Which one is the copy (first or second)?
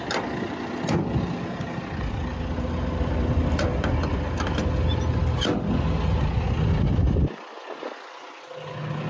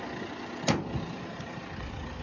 second